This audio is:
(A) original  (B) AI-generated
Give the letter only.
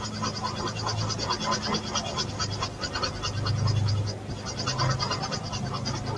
A